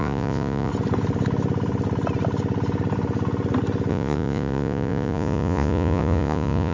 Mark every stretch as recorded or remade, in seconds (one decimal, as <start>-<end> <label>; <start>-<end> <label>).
0.0-0.7 remade; 0.7-3.9 recorded; 3.9-6.7 remade